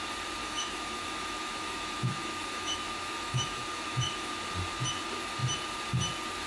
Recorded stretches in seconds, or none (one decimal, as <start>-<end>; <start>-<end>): 0.0-0.4; 4.3-6.5